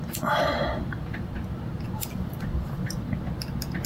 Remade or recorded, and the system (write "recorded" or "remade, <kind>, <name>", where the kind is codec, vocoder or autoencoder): recorded